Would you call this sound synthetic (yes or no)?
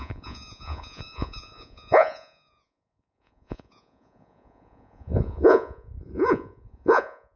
yes